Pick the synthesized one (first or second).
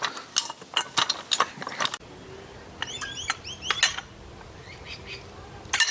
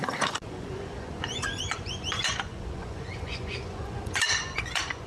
second